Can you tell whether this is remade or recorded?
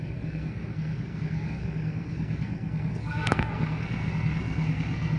remade